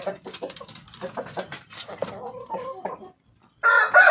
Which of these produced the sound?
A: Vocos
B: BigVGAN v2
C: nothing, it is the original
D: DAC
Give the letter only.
C